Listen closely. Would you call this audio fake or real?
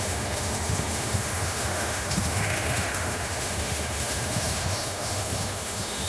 fake